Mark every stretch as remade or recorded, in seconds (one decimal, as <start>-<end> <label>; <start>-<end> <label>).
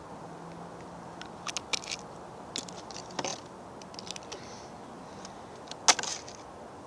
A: 0.0-6.9 recorded